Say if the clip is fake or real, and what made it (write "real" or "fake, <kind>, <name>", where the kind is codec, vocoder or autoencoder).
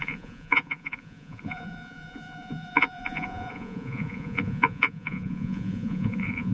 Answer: fake, vocoder, Vocos